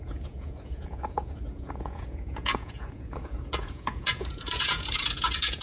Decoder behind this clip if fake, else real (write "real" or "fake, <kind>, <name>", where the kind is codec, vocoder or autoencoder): fake, vocoder, Vocos